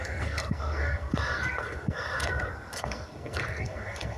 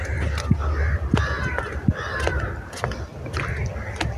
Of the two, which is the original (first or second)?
second